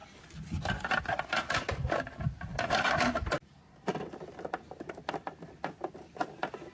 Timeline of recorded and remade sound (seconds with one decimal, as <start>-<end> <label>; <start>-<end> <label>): 0.0-6.7 recorded